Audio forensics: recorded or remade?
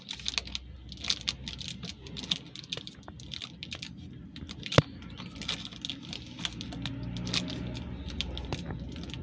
recorded